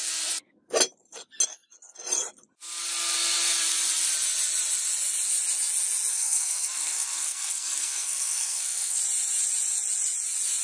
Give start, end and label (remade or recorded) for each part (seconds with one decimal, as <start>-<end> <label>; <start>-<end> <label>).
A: 0.0-6.1 recorded; 6.1-9.0 remade; 9.0-10.6 recorded